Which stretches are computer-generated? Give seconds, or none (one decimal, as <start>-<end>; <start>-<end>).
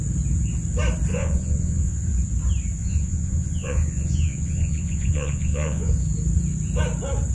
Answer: 1.1-2.0; 2.8-5.9